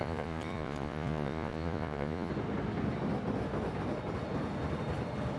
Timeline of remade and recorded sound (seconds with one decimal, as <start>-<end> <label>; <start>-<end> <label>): 0.0-2.3 remade; 2.3-5.4 recorded